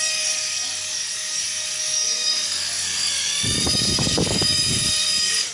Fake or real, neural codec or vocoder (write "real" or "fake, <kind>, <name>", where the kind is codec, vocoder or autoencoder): fake, codec, DAC